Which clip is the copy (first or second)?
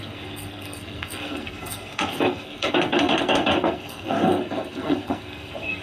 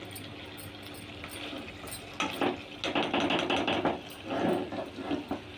first